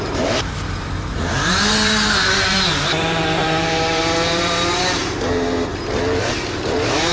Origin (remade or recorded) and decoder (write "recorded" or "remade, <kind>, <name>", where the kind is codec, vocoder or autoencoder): remade, vocoder, BigVGAN v2